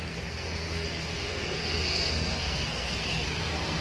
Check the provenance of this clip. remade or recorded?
remade